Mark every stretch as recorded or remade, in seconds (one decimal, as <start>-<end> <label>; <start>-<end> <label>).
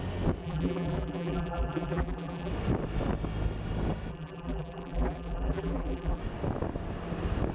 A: 0.0-0.4 recorded; 0.4-2.5 remade; 2.5-4.1 recorded; 4.1-6.2 remade; 6.2-7.5 recorded